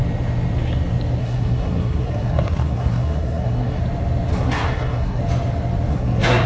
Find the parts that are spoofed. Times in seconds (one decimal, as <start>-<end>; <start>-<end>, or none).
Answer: 1.2-3.8; 4.3-5.2; 5.9-6.5